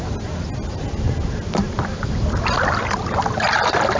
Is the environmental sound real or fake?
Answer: real